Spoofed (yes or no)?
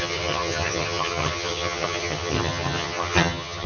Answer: yes